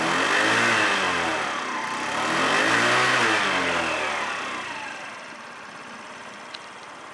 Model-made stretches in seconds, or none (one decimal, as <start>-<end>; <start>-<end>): none